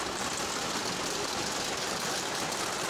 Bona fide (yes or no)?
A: yes